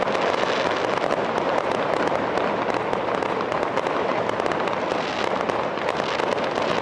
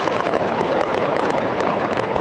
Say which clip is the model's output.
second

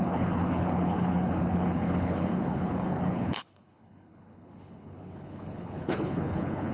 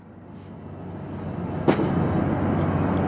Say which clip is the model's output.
first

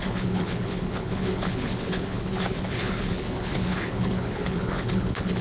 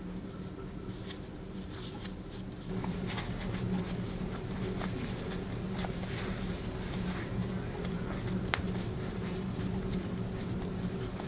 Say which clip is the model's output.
first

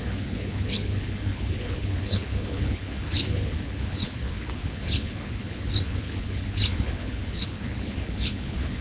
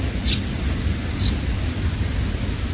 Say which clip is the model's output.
first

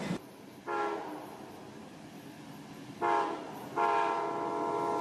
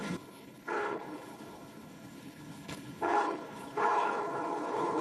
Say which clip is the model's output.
second